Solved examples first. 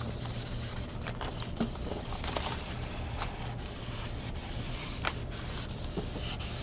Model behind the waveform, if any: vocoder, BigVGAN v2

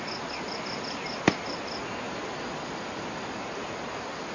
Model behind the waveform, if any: none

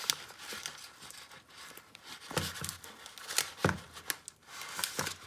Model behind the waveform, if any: none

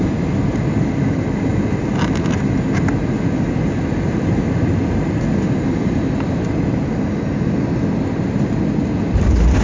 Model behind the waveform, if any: none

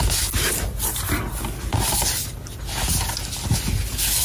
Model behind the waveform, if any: none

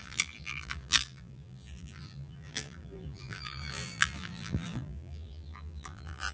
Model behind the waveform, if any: vocoder, BigVGAN v2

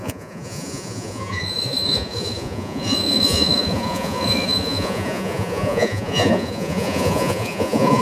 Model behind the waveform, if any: vocoder, Vocos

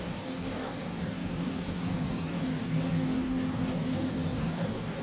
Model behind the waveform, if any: codec, DAC